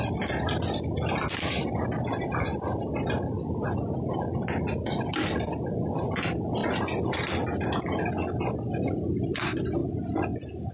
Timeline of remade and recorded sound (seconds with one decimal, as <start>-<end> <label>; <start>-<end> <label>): 0.0-10.7 recorded